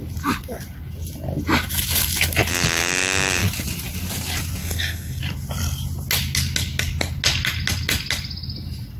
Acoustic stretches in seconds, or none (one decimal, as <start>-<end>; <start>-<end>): 0.0-4.6; 5.2-9.0